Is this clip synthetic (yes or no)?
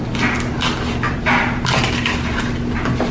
no